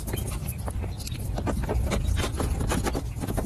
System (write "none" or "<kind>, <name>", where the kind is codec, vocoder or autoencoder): none